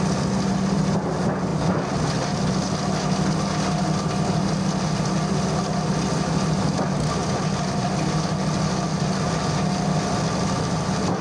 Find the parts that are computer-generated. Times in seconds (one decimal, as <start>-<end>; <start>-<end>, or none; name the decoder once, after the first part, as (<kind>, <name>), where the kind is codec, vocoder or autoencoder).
none